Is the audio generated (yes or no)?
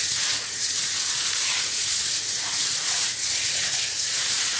yes